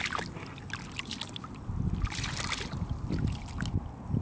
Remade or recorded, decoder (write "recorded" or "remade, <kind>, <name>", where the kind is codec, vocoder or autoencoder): recorded